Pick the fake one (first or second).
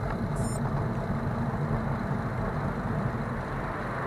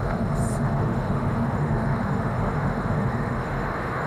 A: second